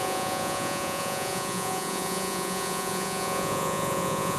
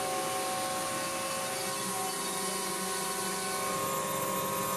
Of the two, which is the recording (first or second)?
second